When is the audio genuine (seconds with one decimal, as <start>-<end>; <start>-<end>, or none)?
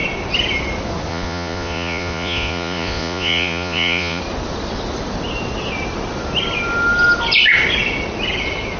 0.0-1.1; 4.2-8.8